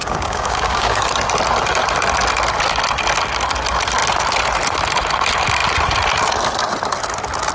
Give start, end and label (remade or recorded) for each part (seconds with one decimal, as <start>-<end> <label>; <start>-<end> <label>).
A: 0.0-1.1 remade; 1.1-7.5 recorded

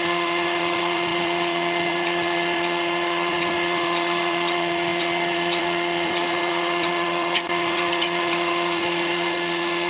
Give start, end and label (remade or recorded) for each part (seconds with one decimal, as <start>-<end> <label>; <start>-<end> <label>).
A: 0.0-9.9 remade

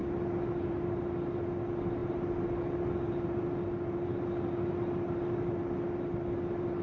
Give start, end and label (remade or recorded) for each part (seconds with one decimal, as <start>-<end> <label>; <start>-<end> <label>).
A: 0.0-6.8 recorded

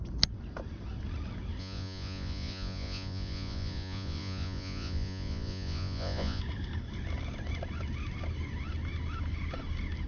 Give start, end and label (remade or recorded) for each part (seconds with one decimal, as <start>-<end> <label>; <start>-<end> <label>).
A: 0.0-1.6 recorded; 1.6-6.4 remade; 6.4-10.1 recorded

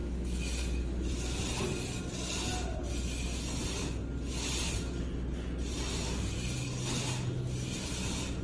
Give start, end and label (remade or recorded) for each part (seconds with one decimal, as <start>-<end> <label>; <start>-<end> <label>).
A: 0.0-8.4 recorded

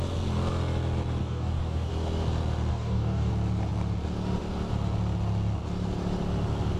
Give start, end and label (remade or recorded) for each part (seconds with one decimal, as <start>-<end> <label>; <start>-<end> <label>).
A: 0.0-1.2 recorded; 1.2-1.9 remade; 1.9-2.7 recorded; 2.7-3.3 remade; 3.3-6.8 recorded

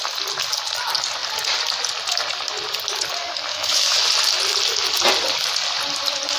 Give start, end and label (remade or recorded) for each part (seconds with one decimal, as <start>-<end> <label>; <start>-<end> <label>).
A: 0.0-3.5 recorded; 3.5-4.1 remade; 4.1-6.4 recorded